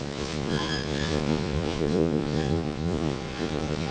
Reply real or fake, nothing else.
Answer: fake